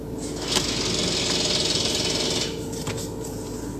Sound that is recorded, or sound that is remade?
recorded